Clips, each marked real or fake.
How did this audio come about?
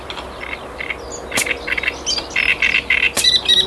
real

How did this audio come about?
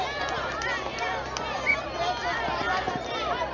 real